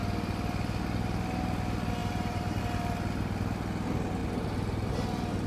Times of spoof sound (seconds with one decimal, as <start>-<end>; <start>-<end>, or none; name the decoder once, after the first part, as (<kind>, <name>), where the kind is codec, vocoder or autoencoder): 2.0-2.6 (vocoder, BigVGAN v2); 4.2-4.9